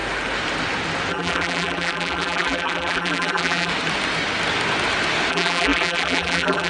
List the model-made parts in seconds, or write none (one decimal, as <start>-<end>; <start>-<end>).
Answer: 1.1-3.7; 5.3-6.7